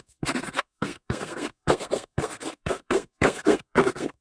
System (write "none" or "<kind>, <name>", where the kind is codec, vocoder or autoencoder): codec, SNAC